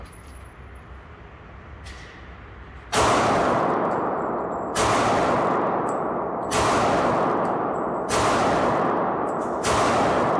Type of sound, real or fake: real